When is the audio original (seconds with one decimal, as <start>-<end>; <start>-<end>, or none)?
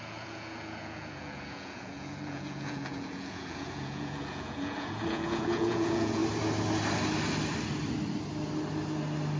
6.2-9.4